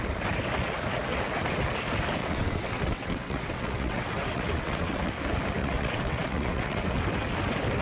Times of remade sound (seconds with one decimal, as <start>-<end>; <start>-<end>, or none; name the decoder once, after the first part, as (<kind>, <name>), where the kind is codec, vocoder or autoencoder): 2.2-5.1 (vocoder, WaveNeXt); 5.6-6.8